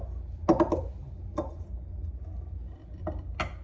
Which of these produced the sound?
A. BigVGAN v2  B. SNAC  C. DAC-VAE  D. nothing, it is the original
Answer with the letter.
D